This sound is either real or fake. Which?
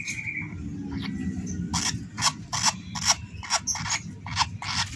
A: real